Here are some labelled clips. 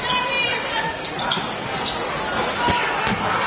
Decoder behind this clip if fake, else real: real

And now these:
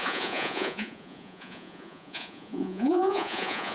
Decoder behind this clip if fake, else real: fake, vocoder, Vocos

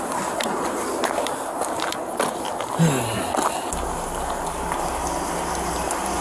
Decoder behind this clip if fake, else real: real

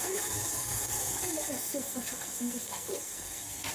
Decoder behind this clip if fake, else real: fake, codec, SNAC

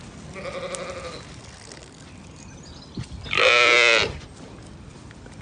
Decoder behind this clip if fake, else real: real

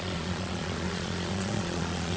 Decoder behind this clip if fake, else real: fake, vocoder, Vocos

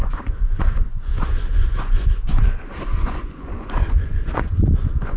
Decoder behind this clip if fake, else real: fake, vocoder, Vocos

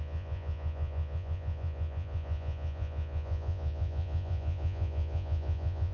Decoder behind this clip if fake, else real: fake, vocoder, Vocos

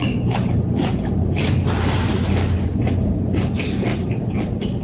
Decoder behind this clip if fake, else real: real